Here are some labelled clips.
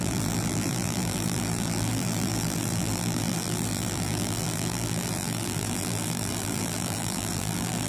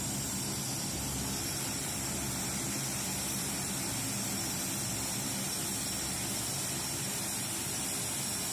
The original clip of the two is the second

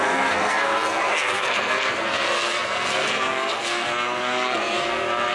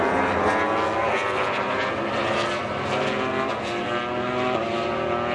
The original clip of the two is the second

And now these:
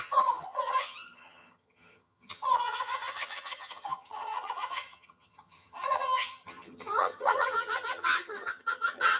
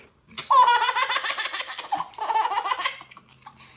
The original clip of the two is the second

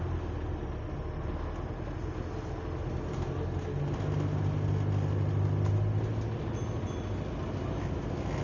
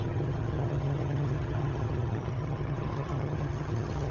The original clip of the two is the first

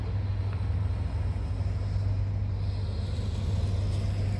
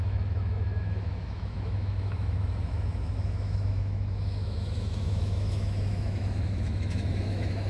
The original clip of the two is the first